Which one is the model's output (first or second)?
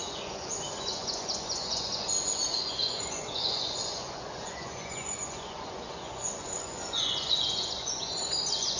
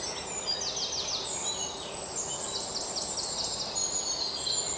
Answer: first